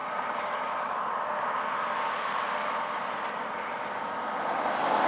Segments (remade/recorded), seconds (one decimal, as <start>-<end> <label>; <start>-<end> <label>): 0.0-1.0 remade; 1.0-5.1 recorded